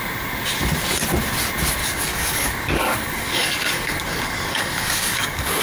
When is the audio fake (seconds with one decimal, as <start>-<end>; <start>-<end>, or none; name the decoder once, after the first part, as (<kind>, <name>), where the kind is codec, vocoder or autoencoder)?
1.8-5.6 (codec, DAC)